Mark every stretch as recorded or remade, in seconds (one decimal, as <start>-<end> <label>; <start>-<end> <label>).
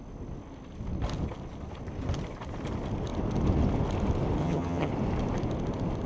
0.0-4.4 recorded; 4.4-4.9 remade; 4.9-6.1 recorded